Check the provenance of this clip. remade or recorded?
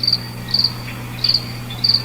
recorded